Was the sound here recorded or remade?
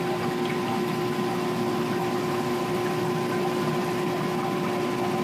recorded